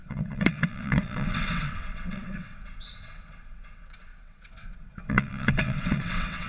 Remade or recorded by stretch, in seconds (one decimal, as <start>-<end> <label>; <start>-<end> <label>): 0.0-6.5 remade